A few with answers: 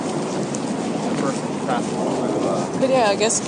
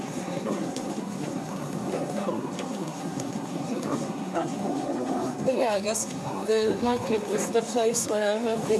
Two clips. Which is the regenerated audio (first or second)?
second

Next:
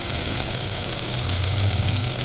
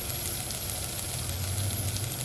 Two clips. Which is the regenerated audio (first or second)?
first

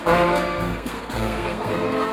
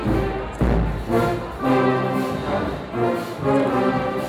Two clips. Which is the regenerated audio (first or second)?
first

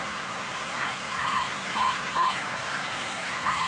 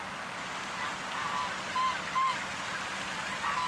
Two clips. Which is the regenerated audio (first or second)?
first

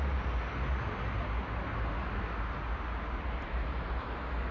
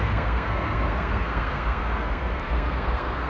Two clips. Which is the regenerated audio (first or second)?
second